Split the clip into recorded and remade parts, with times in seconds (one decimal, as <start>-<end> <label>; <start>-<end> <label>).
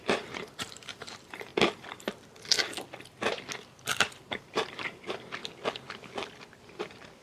0.0-1.5 remade; 1.5-4.4 recorded; 4.4-5.4 remade; 5.4-6.6 recorded; 6.6-7.2 remade